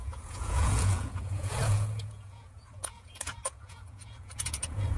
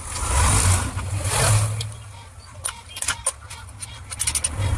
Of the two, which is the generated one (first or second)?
first